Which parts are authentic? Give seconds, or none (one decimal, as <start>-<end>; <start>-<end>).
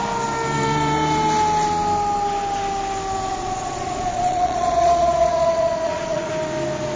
0.0-3.3; 6.3-7.0